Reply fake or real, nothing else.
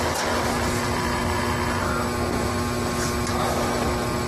real